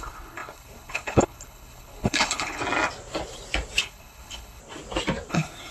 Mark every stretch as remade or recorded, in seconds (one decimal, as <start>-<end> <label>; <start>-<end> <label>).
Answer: 0.0-2.6 remade; 2.6-3.8 recorded; 3.8-4.6 remade; 4.6-5.3 recorded; 5.3-5.7 remade